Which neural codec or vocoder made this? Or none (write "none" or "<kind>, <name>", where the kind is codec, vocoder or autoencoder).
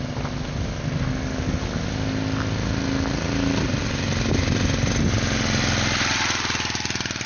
none